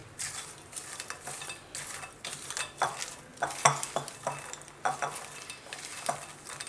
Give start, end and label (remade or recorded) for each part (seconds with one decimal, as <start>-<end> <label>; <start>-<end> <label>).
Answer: 0.0-6.7 recorded